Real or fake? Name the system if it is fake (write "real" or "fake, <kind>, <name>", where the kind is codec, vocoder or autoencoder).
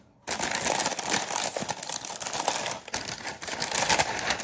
real